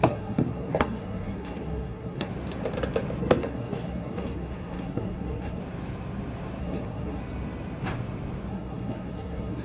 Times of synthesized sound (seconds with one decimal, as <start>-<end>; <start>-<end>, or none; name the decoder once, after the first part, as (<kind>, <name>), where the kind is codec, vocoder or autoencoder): 0.0-2.3 (codec, SNAC); 3.2-5.6; 6.6-7.2; 8.5-9.6